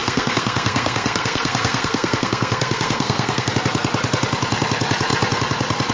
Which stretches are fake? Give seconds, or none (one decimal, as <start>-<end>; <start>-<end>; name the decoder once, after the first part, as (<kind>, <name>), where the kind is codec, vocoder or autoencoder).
0.0-3.5 (codec, SNAC)